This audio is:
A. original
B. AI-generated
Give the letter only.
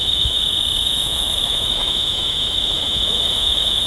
B